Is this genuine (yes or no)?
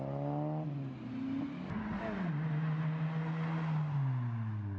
yes